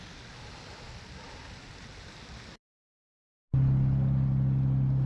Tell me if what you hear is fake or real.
real